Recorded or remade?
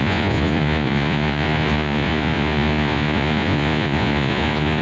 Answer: remade